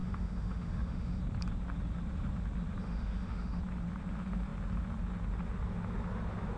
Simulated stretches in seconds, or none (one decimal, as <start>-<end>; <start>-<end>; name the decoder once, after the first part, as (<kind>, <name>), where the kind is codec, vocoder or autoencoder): 0.0-1.2 (autoencoder, DAC-VAE); 2.8-3.6